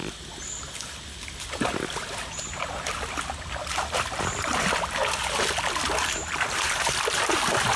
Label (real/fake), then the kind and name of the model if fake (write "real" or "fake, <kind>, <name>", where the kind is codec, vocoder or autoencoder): real